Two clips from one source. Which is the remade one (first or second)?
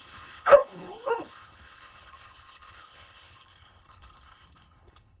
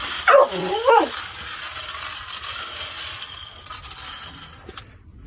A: first